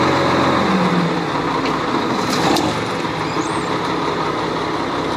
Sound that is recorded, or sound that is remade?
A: recorded